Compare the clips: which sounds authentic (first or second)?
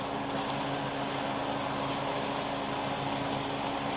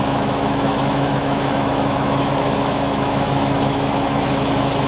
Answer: first